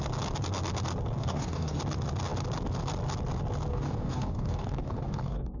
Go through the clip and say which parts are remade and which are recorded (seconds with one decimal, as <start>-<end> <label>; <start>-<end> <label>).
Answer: 0.0-1.2 recorded; 1.2-1.8 remade; 1.8-3.7 recorded; 3.7-5.6 remade